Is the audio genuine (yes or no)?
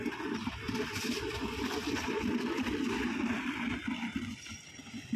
no